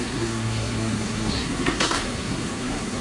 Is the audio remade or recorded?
remade